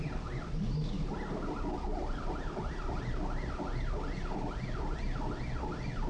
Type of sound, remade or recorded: recorded